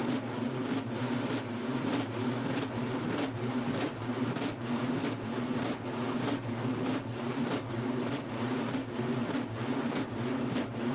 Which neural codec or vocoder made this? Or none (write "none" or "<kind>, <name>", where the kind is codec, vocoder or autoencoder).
none